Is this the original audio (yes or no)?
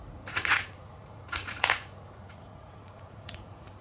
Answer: no